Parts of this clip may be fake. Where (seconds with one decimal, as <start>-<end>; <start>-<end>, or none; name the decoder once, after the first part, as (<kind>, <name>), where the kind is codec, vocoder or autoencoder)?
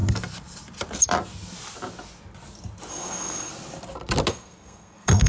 2.9-3.5 (codec, SNAC); 4.3-5.3